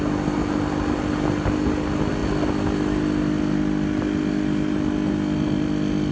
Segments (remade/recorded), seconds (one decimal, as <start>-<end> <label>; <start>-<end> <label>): 0.0-6.1 recorded